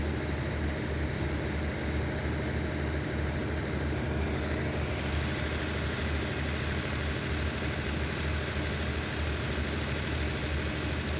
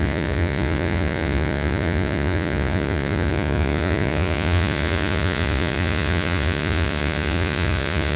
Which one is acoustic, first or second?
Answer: first